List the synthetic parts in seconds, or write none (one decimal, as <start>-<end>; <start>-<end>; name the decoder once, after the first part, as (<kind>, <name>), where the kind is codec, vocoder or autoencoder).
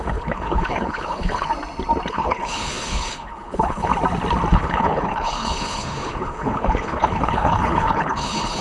0.0-1.5 (codec, HILCodec); 2.1-3.9; 4.5-8.6